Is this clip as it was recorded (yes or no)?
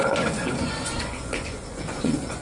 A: no